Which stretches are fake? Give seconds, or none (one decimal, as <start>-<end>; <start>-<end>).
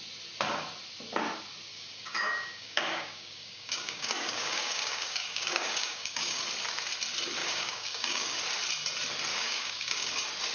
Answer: 1.7-6.4; 7.4-8.4; 9.3-10.1